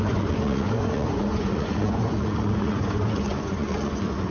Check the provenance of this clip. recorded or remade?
remade